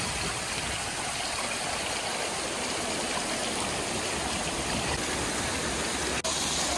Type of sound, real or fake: real